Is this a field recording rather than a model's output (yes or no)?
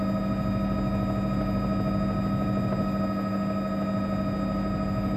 yes